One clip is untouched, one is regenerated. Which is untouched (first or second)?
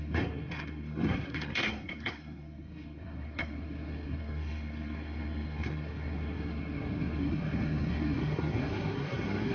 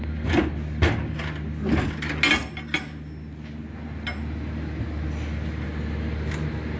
second